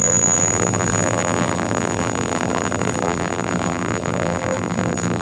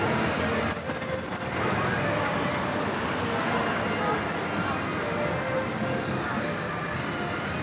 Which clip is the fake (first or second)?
first